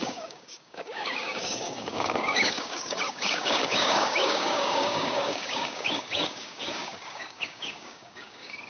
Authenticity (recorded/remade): remade